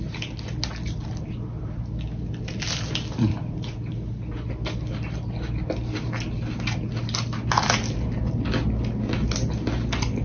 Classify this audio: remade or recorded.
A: recorded